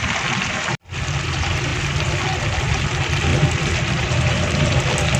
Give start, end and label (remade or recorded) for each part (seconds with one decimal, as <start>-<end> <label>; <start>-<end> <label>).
0.0-1.7 remade; 1.7-2.7 recorded; 2.7-5.2 remade